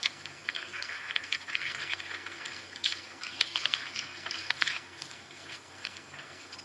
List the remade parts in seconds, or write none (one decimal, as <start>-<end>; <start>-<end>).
0.0-6.6